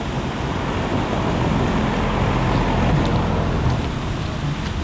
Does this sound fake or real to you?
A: real